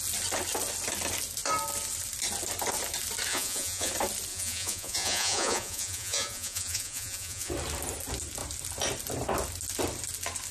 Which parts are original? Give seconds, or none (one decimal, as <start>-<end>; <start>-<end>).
0.0-3.3; 3.9-4.3; 7.5-10.5